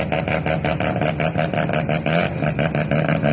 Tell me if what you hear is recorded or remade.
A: recorded